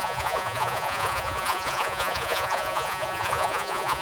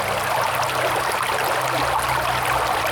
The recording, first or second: second